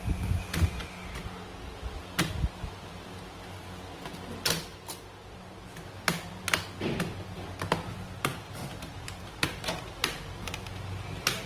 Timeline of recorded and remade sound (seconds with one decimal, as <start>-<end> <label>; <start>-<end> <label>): 0.0-8.3 recorded; 8.3-10.5 remade; 10.5-11.5 recorded